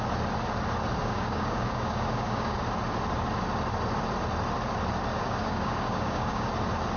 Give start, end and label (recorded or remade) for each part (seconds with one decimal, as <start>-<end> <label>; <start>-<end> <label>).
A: 0.0-1.0 recorded; 1.0-2.6 remade; 2.6-5.1 recorded; 5.1-6.5 remade; 6.5-7.0 recorded